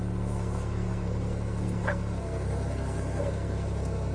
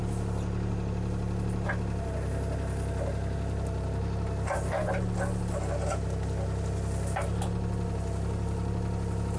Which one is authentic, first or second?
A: second